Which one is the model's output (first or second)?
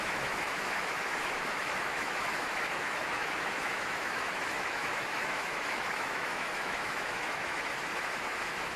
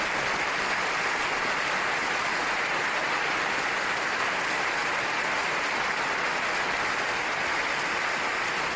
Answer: first